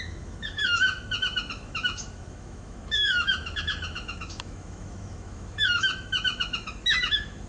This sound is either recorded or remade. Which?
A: remade